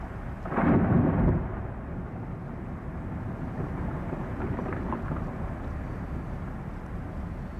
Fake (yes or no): no